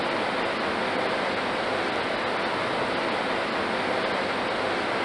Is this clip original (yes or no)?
yes